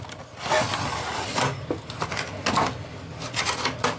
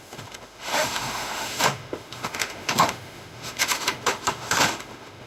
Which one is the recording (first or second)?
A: first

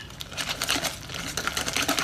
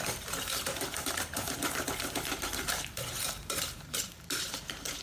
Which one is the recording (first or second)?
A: first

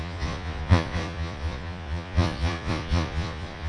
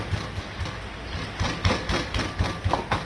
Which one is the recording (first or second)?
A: second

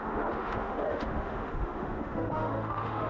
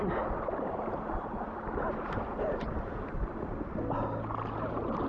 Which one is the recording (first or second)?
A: second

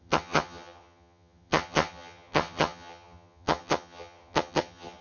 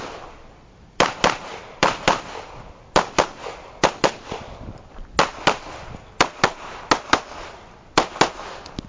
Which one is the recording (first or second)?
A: second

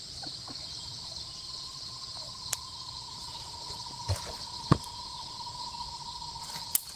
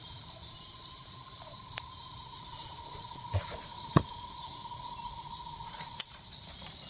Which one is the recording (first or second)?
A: first